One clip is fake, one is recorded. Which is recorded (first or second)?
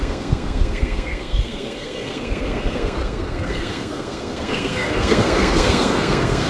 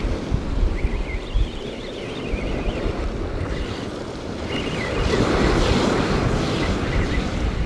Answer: second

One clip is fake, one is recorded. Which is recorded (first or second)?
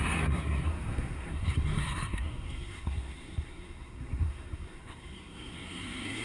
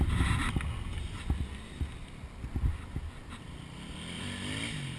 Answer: second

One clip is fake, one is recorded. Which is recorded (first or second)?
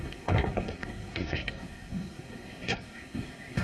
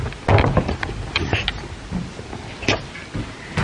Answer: second